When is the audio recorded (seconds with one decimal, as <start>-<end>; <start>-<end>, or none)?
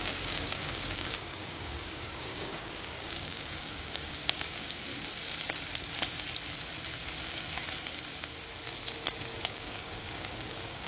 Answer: 4.9-9.4